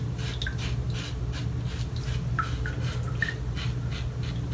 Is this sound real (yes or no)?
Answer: yes